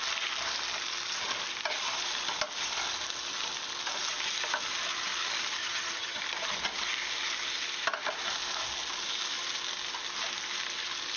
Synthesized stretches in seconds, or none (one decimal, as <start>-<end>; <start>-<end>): 5.6-6.2

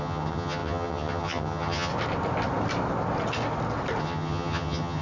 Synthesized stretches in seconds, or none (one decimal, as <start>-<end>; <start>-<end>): 0.0-1.9; 4.0-5.0

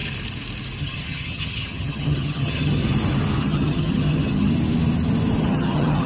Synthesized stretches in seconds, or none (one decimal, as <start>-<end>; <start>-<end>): 0.8-2.8; 3.4-4.5; 5.4-6.1

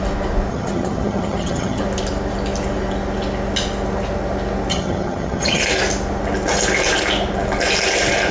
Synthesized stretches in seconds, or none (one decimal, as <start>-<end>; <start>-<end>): 0.5-1.8; 4.7-5.6

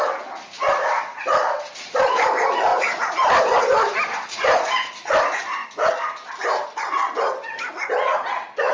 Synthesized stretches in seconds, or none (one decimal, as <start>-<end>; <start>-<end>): none

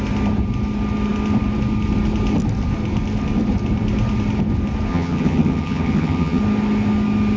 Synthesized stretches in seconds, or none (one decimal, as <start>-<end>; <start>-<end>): 4.9-6.4

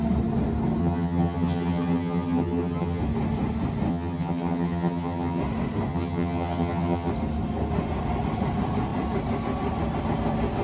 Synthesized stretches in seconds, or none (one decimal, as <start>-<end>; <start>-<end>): 0.8-3.0; 3.9-5.4; 5.9-7.1